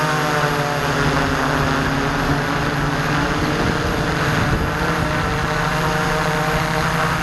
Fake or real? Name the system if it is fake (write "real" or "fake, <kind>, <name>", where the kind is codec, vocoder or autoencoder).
real